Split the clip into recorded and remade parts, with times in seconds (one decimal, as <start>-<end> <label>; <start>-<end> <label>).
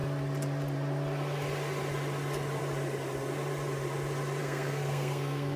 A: 0.0-4.4 recorded; 4.4-5.6 remade